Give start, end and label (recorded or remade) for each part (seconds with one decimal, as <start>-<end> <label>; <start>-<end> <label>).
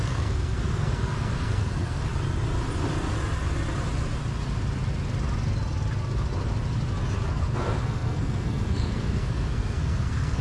0.0-2.1 remade; 2.1-7.3 recorded; 7.3-10.4 remade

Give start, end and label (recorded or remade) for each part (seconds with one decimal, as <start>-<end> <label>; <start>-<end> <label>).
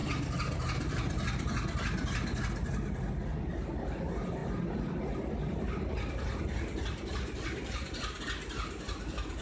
0.0-9.4 recorded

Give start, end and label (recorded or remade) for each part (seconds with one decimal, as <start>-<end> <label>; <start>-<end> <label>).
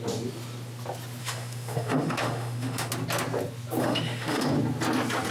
0.0-1.2 recorded; 1.2-2.9 remade; 2.9-3.8 recorded; 3.8-4.4 remade; 4.4-5.3 recorded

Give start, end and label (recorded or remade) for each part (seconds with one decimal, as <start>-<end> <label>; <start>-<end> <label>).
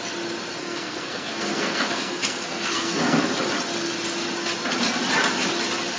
0.0-0.6 recorded; 0.6-3.2 remade; 3.2-6.0 recorded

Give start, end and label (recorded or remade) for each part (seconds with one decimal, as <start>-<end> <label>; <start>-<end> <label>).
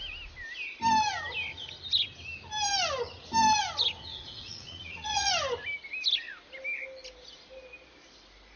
0.0-4.1 recorded; 4.1-5.3 remade; 5.3-8.6 recorded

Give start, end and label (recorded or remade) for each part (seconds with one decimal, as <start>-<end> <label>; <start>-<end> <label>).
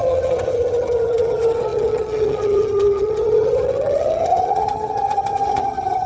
0.0-6.1 remade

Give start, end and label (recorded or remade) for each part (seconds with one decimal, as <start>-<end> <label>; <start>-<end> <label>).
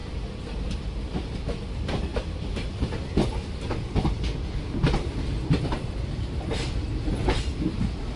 0.0-8.2 recorded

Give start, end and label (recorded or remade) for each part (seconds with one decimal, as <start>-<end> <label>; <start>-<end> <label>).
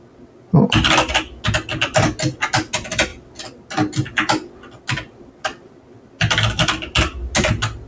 0.0-7.9 recorded